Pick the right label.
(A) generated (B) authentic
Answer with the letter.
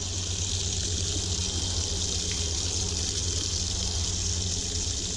B